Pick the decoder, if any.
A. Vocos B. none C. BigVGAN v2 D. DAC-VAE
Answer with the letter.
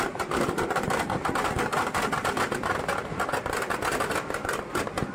B